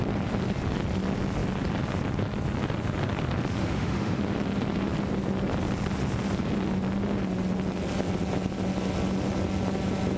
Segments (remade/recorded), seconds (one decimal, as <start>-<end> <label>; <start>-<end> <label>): 0.0-3.6 recorded; 3.6-4.2 remade; 4.2-10.2 recorded